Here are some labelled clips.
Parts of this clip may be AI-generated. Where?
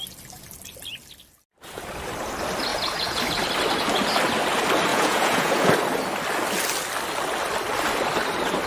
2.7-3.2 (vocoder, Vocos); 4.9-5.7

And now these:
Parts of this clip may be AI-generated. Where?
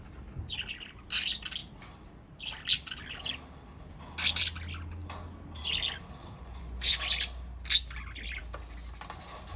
6.2-6.9 (vocoder, Vocos)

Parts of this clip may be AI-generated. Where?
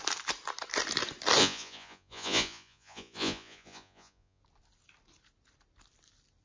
1.4-4.4 (vocoder, Vocos)